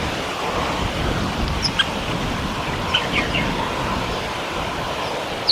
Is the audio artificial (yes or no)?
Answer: no